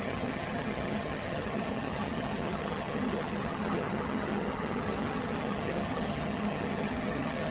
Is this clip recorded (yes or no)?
no